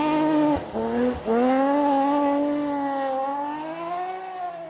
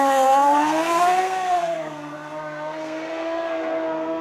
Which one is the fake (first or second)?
second